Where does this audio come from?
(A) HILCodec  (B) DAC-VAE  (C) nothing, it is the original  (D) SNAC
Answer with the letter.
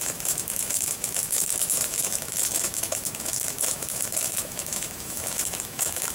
B